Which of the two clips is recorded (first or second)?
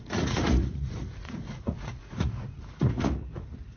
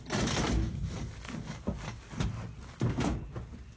second